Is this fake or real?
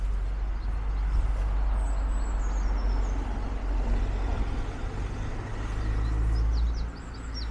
real